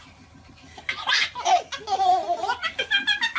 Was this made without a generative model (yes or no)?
yes